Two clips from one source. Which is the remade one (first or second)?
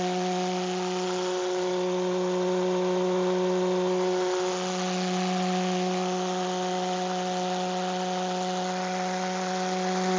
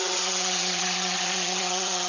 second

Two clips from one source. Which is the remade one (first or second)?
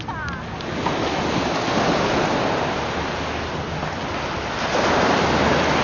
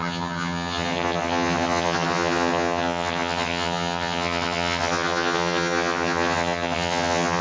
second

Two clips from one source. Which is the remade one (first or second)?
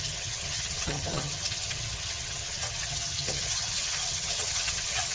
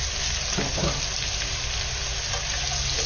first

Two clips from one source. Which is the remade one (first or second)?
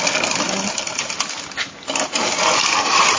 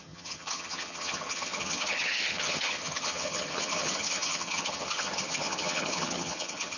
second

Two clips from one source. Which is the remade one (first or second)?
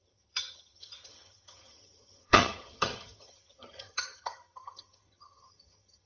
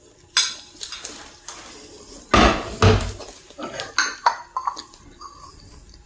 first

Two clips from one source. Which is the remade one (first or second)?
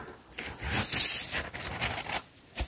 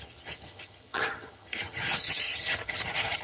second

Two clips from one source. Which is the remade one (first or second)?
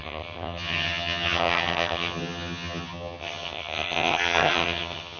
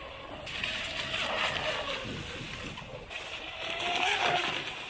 first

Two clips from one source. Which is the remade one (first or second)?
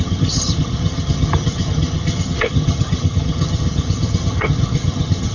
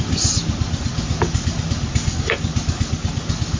first